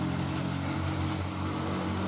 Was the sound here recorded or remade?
recorded